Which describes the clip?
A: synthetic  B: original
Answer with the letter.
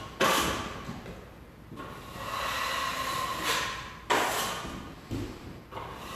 B